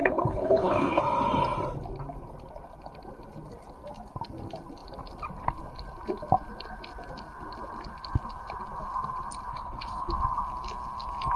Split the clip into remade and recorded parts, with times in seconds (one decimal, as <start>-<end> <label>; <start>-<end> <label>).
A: 0.0-1.0 remade; 1.0-9.5 recorded; 9.5-10.1 remade; 10.1-11.4 recorded